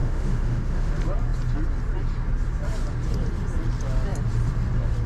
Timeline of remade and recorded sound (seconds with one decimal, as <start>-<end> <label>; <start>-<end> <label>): 0.0-0.9 remade; 0.9-5.1 recorded